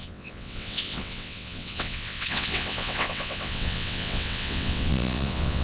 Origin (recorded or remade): remade